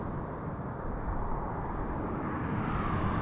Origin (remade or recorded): recorded